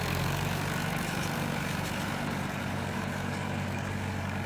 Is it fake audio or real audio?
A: fake